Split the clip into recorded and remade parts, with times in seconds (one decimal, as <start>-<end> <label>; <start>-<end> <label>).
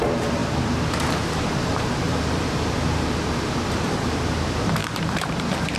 0.0-5.8 remade